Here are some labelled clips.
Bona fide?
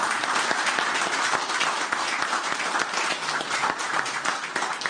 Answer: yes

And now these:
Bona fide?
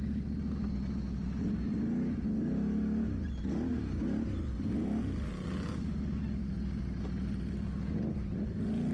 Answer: yes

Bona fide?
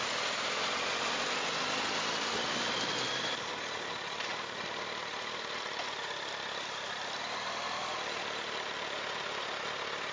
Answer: yes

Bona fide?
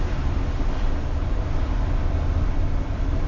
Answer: yes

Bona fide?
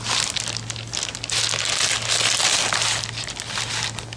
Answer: yes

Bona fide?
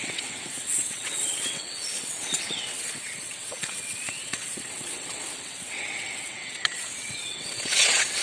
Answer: no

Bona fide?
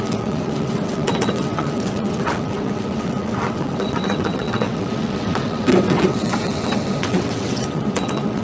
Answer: no